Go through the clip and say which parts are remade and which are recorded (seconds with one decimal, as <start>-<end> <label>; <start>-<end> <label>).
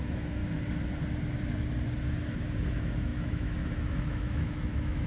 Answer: 0.0-0.4 remade; 0.4-2.7 recorded; 2.7-5.1 remade